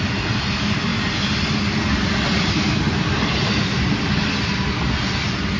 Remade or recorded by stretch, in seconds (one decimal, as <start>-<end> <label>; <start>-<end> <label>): 0.0-5.6 recorded